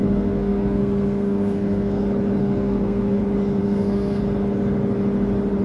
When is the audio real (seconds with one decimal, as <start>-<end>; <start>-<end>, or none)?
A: 2.0-2.4; 3.2-3.6; 4.2-5.6